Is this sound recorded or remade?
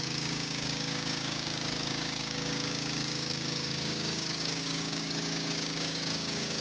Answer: remade